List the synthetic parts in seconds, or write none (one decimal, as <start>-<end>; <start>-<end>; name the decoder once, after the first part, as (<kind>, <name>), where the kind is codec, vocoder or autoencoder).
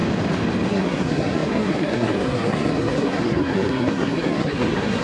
0.7-5.0 (codec, SNAC)